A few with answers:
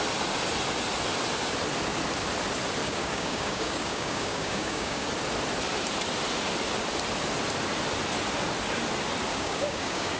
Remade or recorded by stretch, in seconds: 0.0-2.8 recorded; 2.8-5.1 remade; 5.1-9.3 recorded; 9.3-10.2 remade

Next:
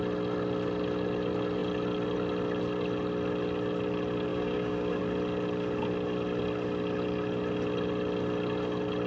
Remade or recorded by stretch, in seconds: 0.0-4.3 recorded; 4.3-5.0 remade; 5.0-9.1 recorded